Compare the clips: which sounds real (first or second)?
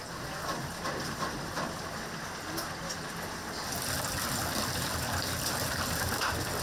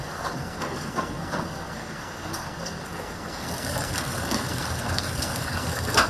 first